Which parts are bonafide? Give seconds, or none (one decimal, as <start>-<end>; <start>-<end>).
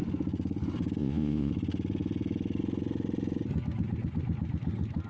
0.0-1.0; 1.5-5.1